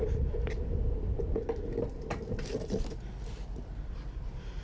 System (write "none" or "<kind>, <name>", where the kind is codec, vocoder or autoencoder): none